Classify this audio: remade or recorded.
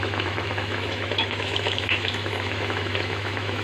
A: remade